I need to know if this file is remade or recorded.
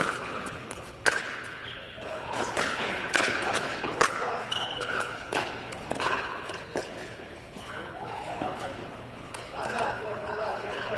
remade